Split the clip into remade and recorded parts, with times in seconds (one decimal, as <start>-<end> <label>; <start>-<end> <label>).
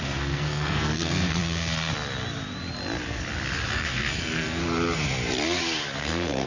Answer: 0.0-1.4 remade; 1.4-3.7 recorded; 3.7-4.6 remade; 4.6-6.0 recorded; 6.0-6.5 remade